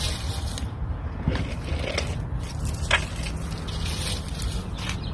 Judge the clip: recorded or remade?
recorded